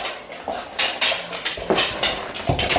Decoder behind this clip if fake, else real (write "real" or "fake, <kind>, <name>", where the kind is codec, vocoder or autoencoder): real